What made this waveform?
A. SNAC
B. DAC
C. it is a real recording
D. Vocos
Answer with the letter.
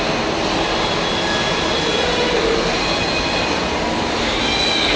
C